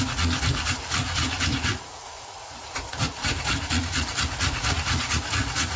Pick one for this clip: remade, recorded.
remade